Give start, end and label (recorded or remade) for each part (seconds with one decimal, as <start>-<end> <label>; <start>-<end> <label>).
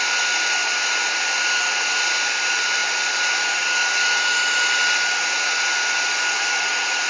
0.0-7.1 recorded